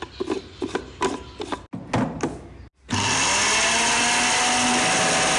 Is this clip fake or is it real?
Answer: real